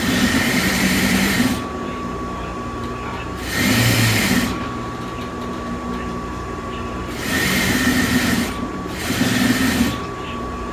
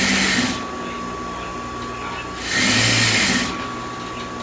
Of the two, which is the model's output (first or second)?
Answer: first